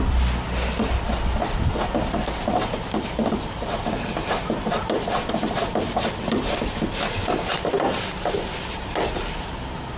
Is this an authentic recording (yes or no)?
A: yes